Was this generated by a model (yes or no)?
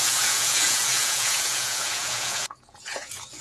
yes